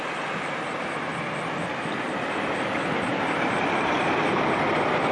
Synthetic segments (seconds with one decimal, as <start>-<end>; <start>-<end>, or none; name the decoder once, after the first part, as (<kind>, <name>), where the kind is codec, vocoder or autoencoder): none